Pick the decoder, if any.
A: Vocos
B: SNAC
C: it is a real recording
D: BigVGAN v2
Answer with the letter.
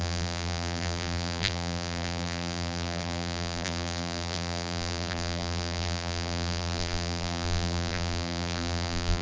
D